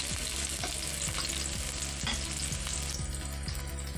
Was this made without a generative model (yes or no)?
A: yes